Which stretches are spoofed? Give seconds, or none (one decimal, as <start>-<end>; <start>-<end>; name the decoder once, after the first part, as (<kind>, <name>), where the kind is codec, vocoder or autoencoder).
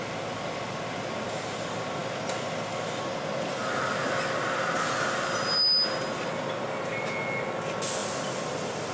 8.0-8.9 (vocoder, BigVGAN v2)